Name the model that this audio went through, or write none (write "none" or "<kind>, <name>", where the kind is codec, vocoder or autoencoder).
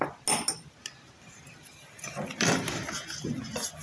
none